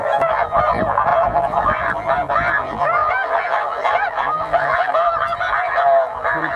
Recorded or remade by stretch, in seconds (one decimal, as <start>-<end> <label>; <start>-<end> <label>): 0.0-6.6 remade